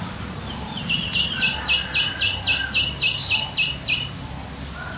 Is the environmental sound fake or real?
real